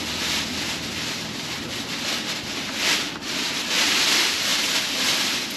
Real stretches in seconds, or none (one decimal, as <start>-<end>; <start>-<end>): 4.5-5.0